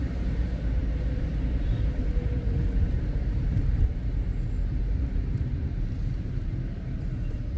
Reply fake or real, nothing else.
fake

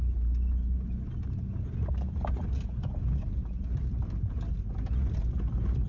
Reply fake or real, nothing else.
real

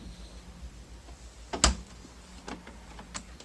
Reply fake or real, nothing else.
real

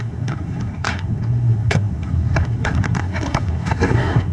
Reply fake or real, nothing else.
fake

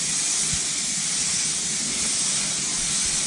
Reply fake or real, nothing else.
real